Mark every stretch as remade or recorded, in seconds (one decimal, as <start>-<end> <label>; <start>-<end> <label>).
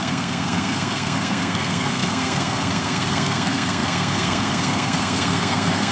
0.0-5.9 remade